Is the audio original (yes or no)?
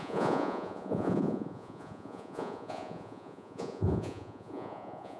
no